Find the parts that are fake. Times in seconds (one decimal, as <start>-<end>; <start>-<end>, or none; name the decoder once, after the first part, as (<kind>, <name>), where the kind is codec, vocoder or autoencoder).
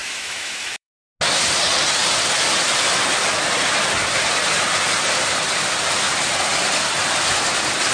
0.0-0.9 (autoencoder, DAC-VAE)